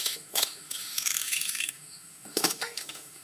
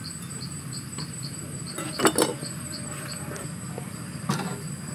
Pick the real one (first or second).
second